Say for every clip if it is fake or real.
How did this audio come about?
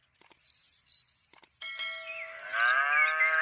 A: real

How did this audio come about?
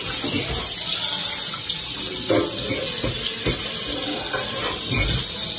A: real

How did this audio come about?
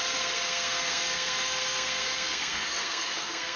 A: fake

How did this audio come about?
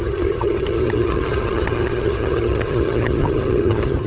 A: fake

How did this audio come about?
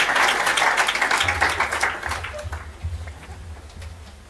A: real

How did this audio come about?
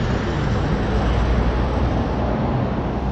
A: real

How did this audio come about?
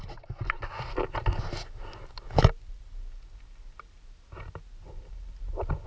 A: real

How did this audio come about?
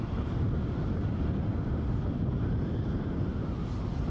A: real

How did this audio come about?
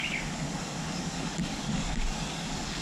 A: fake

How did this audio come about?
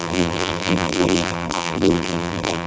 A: fake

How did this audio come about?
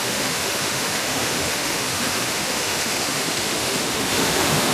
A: fake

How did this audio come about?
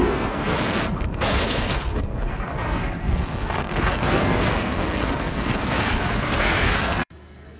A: fake